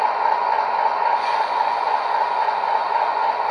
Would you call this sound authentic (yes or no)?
no